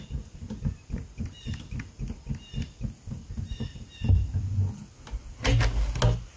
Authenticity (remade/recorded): recorded